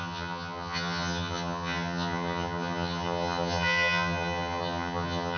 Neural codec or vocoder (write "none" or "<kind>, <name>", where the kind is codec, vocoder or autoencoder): vocoder, HiFi-GAN